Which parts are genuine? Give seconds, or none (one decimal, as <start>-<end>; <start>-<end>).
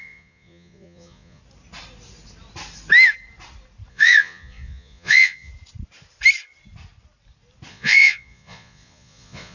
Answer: 1.4-3.9; 5.5-7.7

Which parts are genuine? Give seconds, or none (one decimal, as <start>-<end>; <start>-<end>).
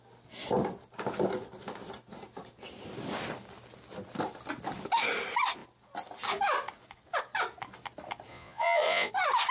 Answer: 0.0-8.3; 9.1-9.5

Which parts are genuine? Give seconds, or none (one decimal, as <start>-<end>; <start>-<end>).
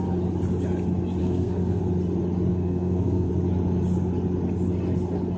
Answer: 0.0-1.2; 1.8-2.5; 3.3-5.4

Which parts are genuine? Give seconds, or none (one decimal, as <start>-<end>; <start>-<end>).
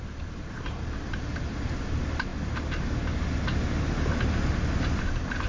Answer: 2.3-4.4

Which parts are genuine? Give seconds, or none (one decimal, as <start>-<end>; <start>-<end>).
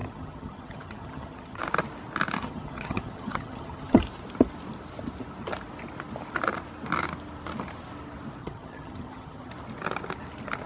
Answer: 1.6-2.4; 4.0-8.4; 9.5-10.7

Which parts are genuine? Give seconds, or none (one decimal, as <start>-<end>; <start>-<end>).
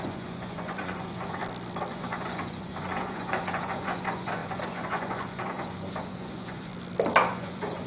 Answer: 1.4-1.9; 6.7-7.3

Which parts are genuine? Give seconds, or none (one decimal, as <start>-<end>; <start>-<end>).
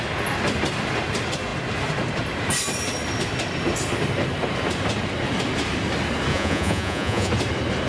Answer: 0.0-6.3; 7.3-7.9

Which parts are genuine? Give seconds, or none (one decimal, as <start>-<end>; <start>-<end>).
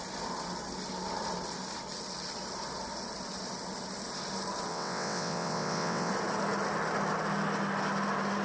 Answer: 0.0-4.7; 6.1-8.4